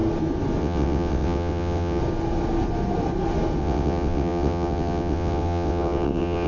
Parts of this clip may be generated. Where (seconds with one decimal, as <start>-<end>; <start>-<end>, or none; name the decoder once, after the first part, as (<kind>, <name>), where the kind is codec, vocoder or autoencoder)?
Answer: 0.6-2.0 (vocoder, WaveNeXt); 3.6-6.5